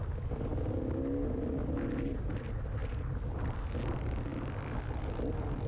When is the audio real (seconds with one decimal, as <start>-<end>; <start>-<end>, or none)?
0.0-5.7